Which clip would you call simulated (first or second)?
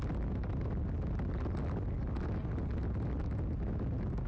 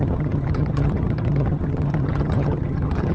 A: second